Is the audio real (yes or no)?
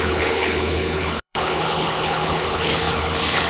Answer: no